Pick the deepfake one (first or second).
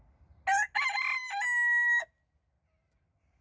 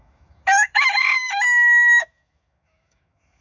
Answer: second